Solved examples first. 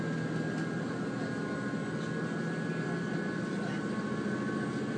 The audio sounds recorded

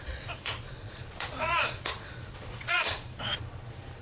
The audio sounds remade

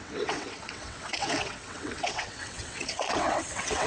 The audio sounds remade